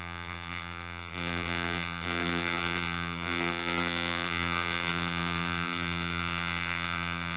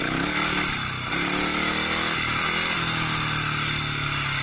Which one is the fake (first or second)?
first